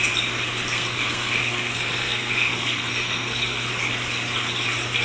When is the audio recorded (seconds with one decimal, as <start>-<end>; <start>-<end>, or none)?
0.0-0.7; 3.7-5.0